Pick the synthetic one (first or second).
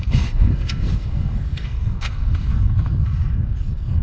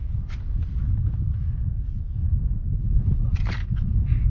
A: first